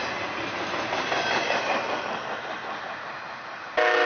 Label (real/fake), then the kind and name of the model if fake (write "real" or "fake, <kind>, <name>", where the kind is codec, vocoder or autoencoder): real